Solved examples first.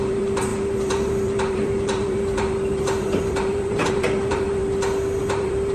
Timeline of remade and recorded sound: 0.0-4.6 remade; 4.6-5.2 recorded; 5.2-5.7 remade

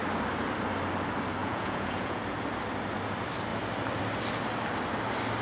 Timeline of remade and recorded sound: 0.0-1.4 recorded; 1.4-2.2 remade; 2.2-5.4 recorded